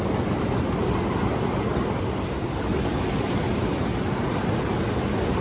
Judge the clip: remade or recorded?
recorded